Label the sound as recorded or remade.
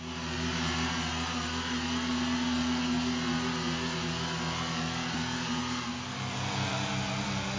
recorded